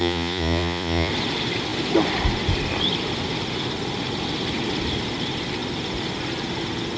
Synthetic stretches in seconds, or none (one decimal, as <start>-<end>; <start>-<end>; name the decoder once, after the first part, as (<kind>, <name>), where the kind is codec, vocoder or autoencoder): 0.0-1.1 (vocoder, Vocos)